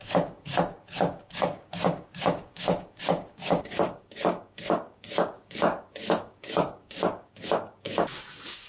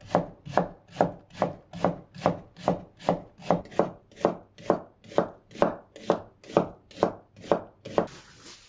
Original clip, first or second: second